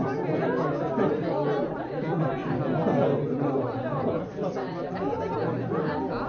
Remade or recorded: recorded